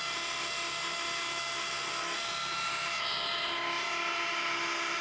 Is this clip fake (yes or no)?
no